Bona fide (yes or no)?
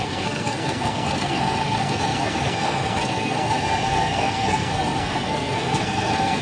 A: no